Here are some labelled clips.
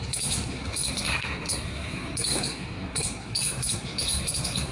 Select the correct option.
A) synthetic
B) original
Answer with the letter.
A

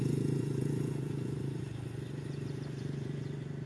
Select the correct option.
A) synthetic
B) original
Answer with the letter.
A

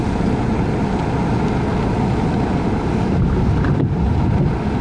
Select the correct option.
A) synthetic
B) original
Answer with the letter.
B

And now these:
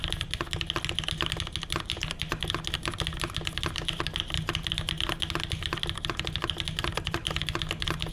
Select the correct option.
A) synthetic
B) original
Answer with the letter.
B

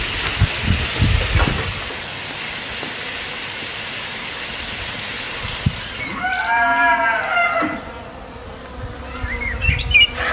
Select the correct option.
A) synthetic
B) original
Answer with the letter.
B